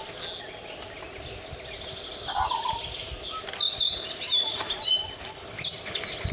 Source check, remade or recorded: recorded